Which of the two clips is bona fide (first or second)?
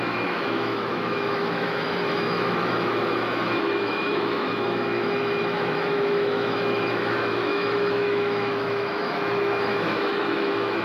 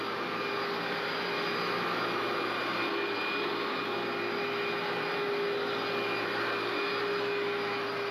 second